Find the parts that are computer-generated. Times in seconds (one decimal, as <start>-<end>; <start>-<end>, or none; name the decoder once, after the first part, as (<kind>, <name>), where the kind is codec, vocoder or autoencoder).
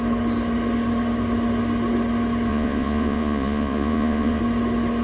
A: 2.5-4.4 (vocoder, Vocos)